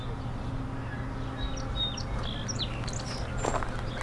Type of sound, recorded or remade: recorded